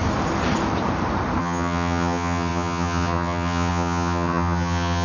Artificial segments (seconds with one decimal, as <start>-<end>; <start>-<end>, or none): 1.4-5.0

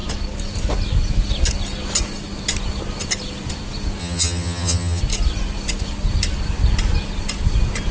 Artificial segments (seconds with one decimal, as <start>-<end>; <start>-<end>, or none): 4.0-5.0